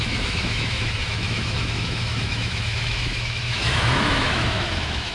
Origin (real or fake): fake